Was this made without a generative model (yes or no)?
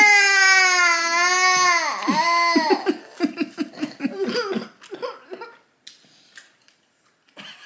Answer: yes